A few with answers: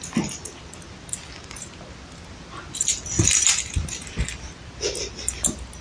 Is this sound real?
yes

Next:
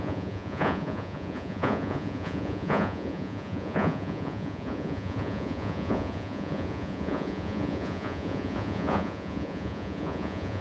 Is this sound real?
no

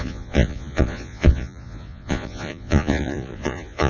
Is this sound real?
no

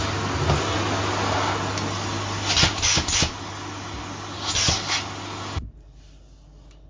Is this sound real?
yes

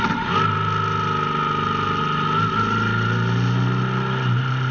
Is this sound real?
yes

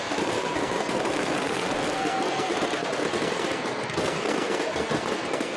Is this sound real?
no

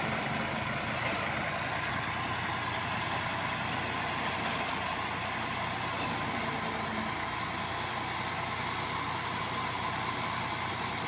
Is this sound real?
yes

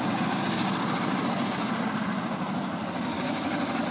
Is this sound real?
yes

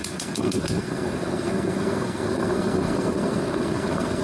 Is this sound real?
no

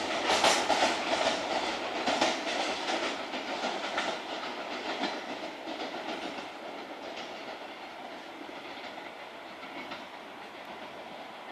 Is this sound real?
yes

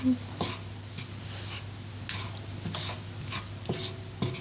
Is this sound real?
yes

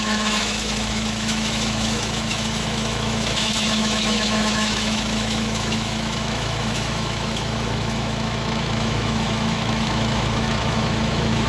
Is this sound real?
no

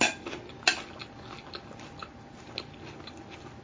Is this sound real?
yes